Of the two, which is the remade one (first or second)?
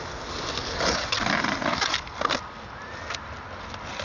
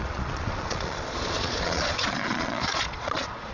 second